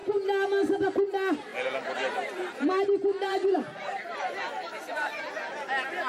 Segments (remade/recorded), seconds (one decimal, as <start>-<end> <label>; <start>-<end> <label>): 0.0-1.5 recorded; 1.5-5.2 remade; 5.2-6.1 recorded